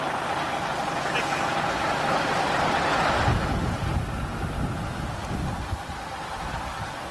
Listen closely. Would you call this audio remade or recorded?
recorded